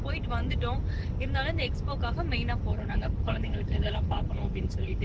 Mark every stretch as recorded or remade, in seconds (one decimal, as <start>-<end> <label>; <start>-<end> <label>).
0.0-2.7 recorded; 2.7-5.0 remade